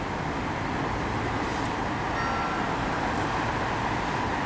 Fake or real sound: real